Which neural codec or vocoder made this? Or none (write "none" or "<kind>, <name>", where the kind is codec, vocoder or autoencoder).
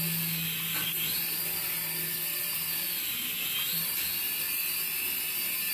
none